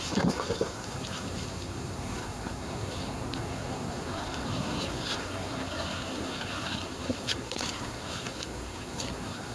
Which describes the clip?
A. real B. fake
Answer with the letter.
B